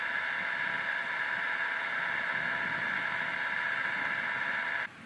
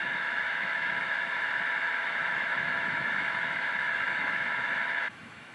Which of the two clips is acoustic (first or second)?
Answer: first